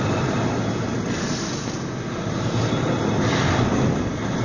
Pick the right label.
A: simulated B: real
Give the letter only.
B